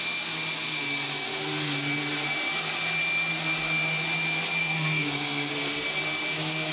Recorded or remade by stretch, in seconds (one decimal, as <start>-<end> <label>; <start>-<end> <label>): 0.0-4.6 recorded; 4.6-5.5 remade; 5.5-6.7 recorded